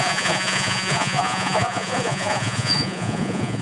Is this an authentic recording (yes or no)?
no